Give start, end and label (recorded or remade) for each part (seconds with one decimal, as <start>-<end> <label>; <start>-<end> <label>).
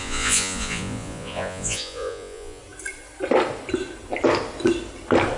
0.0-2.6 remade; 2.6-5.4 recorded